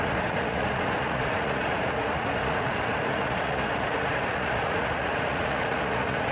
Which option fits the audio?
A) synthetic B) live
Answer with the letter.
A